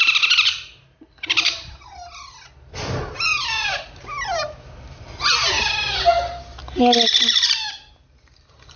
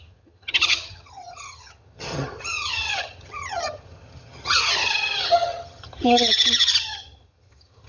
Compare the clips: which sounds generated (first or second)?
second